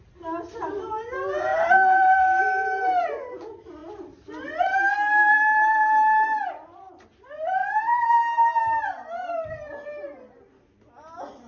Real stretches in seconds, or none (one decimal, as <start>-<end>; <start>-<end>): 0.0-11.5